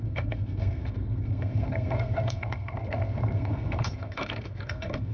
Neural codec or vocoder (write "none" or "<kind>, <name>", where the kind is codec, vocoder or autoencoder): codec, SNAC